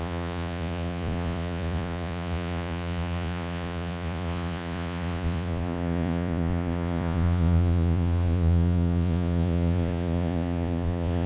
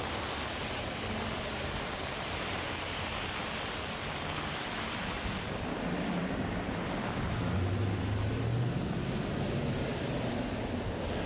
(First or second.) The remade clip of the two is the first